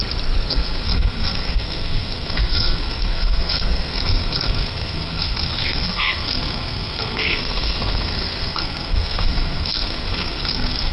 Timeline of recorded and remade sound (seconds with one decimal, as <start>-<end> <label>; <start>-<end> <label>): 0.0-0.5 recorded; 0.5-10.9 remade